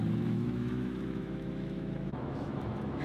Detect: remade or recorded remade